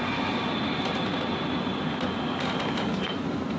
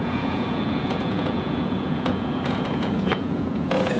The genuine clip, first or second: first